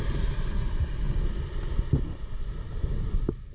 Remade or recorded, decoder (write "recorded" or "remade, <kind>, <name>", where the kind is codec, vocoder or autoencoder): recorded